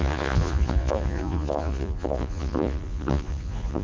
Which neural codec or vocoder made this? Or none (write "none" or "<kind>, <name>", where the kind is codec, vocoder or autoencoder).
vocoder, Vocos